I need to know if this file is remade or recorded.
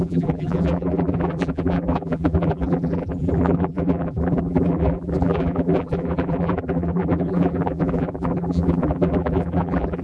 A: remade